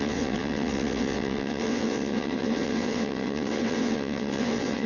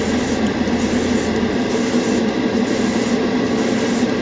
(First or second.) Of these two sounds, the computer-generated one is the first